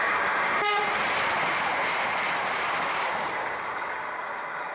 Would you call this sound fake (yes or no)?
no